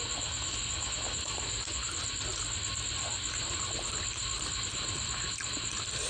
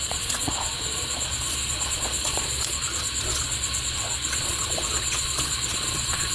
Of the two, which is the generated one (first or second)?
second